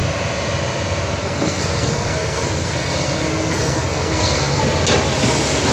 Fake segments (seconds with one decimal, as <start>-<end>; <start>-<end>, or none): 1.2-4.6